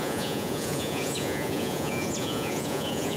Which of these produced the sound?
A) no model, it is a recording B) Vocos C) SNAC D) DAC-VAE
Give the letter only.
B